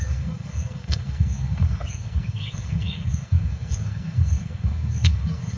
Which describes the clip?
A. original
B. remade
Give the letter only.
B